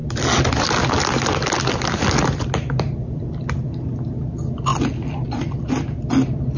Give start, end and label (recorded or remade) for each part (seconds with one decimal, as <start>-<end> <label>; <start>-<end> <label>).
0.0-6.6 recorded